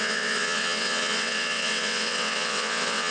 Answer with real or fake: fake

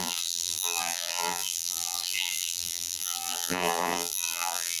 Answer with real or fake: fake